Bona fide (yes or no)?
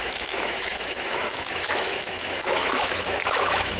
no